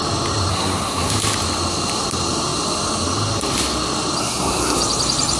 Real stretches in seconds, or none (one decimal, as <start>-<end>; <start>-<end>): 0.0-0.5; 1.1-4.2; 4.8-5.4